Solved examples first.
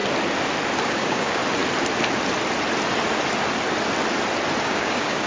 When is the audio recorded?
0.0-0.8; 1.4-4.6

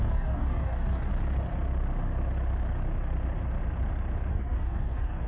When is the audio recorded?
1.1-4.3

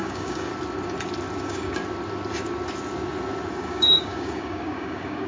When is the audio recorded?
0.5-1.4; 1.8-3.5

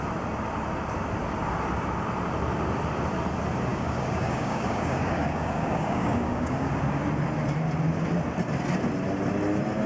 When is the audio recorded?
0.0-3.7; 6.7-9.9

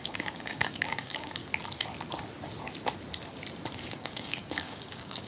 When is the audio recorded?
1.4-3.8

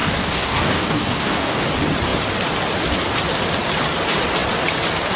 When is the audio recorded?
1.6-5.2

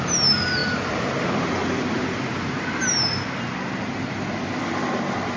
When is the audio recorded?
0.0-5.4

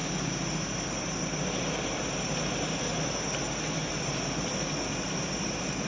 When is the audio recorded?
0.0-5.9